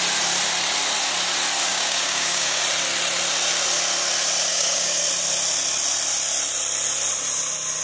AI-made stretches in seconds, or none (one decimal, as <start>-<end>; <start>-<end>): 1.7-2.6; 4.5-5.0